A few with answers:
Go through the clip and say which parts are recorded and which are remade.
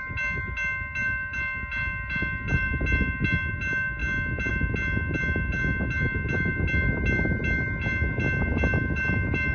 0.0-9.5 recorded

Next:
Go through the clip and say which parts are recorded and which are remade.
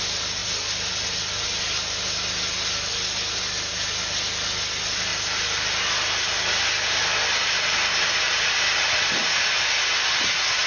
0.0-10.7 recorded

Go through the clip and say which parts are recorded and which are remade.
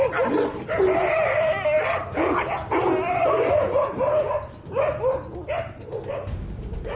0.0-7.0 recorded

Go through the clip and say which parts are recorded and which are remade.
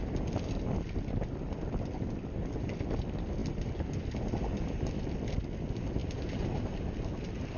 0.0-3.4 recorded; 3.4-4.0 remade; 4.0-4.5 recorded; 4.5-5.0 remade; 5.0-7.6 recorded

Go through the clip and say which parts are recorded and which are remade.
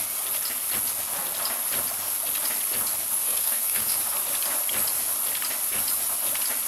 0.0-3.2 recorded; 3.2-4.0 remade; 4.0-6.7 recorded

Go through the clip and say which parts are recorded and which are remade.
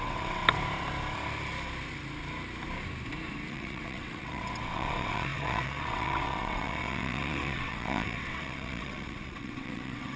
0.0-0.4 remade; 0.4-3.5 recorded; 3.5-10.2 remade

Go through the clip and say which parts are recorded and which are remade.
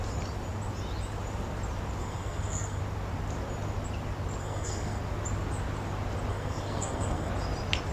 0.0-2.0 recorded; 2.0-2.8 remade; 2.8-4.4 recorded; 4.4-5.0 remade; 5.0-6.3 recorded; 6.3-7.3 remade; 7.3-7.9 recorded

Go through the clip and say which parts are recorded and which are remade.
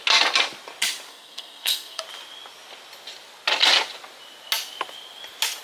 0.0-1.1 recorded; 1.1-2.0 remade; 2.0-5.6 recorded